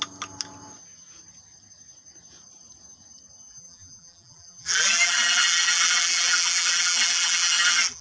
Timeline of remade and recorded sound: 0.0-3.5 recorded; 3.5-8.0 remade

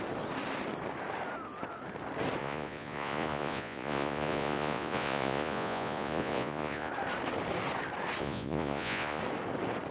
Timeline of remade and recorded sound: 0.0-2.4 recorded; 2.4-6.9 remade; 6.9-8.2 recorded; 8.2-9.2 remade; 9.2-9.9 recorded

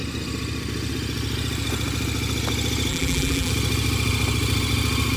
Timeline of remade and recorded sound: 0.0-2.9 recorded; 2.9-3.5 remade; 3.5-5.2 recorded

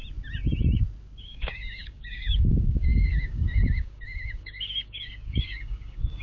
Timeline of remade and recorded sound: 0.0-1.2 recorded; 1.2-6.2 remade

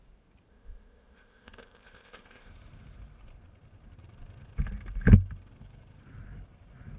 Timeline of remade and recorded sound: 0.0-0.5 recorded; 0.5-2.5 remade; 2.5-7.0 recorded

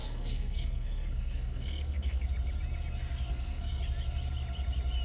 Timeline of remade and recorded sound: 0.0-2.3 remade; 2.3-3.3 recorded; 3.3-3.8 remade; 3.8-5.0 recorded